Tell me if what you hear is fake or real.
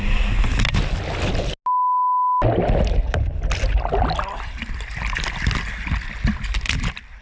real